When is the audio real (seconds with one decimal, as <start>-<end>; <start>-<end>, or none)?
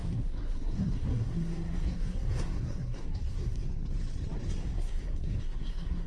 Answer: 3.6-4.6